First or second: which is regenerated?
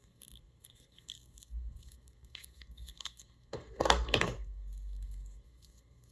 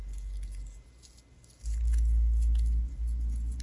first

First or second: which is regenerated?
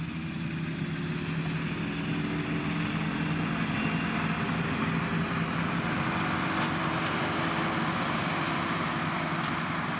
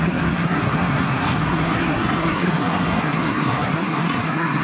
second